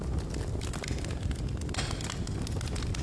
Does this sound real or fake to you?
real